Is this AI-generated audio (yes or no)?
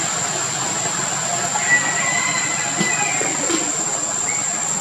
no